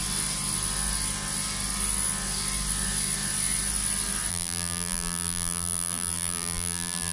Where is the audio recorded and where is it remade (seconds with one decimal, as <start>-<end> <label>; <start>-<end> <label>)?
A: 0.0-4.3 recorded; 4.3-7.1 remade